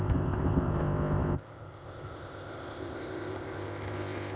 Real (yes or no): no